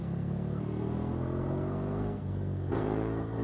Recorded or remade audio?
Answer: remade